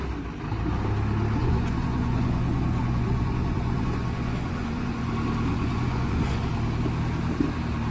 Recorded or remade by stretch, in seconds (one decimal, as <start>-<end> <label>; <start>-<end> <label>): 0.0-1.4 recorded; 1.4-5.1 remade; 5.1-5.5 recorded; 5.5-6.5 remade; 6.5-7.9 recorded